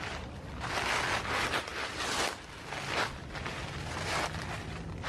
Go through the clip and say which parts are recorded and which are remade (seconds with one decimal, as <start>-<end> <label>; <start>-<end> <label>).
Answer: 0.0-5.1 recorded